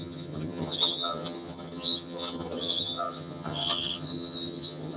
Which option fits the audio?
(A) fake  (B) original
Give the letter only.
A